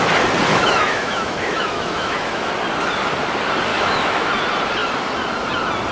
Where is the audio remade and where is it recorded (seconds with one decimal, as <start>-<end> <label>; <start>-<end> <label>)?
0.0-0.5 recorded; 0.5-2.5 remade; 2.5-3.7 recorded; 3.7-4.3 remade; 4.3-5.9 recorded